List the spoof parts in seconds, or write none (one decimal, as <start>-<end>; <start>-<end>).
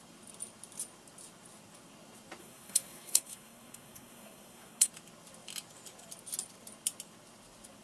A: 2.4-4.9